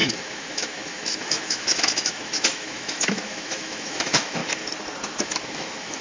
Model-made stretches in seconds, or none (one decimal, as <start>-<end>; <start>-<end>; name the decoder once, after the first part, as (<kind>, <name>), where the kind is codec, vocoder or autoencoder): 0.0-4.4 (autoencoder, DAC-VAE); 5.2-6.0